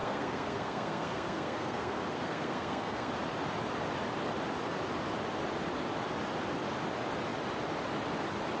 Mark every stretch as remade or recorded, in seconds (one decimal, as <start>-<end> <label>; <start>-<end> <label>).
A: 0.0-3.1 remade; 3.1-8.6 recorded